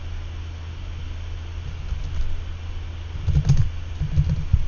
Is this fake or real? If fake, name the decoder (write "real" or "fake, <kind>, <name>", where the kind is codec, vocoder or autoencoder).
real